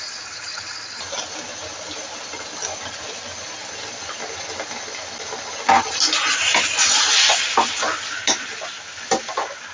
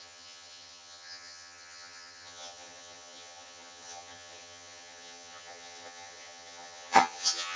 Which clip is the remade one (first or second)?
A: second